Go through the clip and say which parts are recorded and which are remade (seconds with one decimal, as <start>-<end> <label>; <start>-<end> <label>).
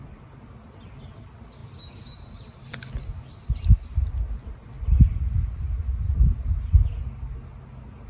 0.0-8.1 recorded